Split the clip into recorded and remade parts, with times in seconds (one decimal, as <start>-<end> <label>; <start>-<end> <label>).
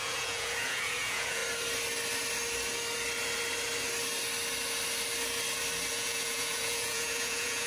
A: 0.0-1.4 remade; 1.4-5.9 recorded; 5.9-7.7 remade